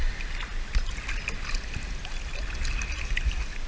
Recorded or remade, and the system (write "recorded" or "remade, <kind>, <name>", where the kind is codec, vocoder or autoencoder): recorded